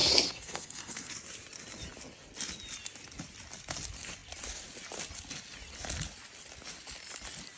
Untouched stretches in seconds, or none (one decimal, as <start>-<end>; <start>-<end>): 1.1-7.6